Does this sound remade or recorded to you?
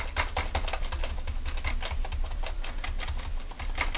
recorded